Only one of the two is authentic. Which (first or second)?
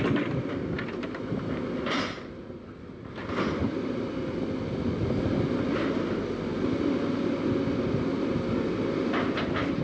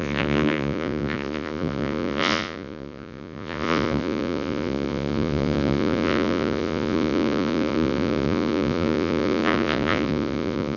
first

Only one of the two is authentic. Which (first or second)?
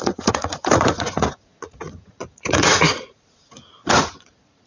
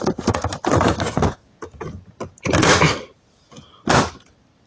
second